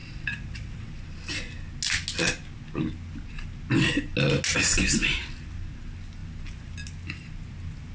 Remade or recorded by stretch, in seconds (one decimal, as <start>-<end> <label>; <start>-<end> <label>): 0.0-0.9 remade; 0.9-7.9 recorded